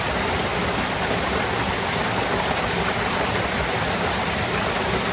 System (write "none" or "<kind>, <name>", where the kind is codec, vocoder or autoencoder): none